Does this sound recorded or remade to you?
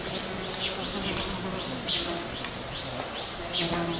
recorded